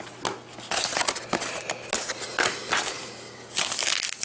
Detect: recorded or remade recorded